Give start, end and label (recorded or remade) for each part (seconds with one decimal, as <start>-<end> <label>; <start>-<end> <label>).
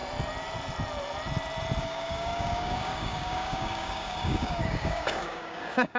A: 0.0-1.8 recorded; 1.8-6.0 remade